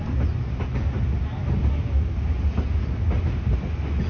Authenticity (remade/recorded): recorded